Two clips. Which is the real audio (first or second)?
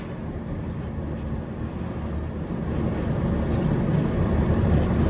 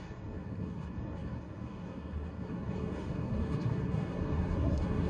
first